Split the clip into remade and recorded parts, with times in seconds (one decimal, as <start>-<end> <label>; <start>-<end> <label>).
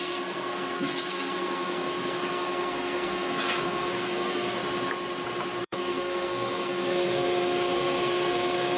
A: 0.0-4.6 remade; 4.6-5.6 recorded; 5.6-8.8 remade